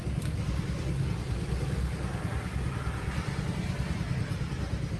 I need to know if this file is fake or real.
real